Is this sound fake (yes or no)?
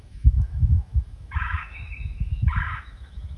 yes